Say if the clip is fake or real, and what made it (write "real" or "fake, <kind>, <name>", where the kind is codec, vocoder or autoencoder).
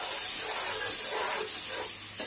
real